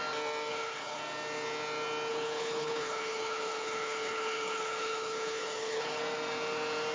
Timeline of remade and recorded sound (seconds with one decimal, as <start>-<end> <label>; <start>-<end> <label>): 0.0-0.5 recorded; 0.5-1.0 remade; 1.0-2.1 recorded; 2.1-6.0 remade; 6.0-6.9 recorded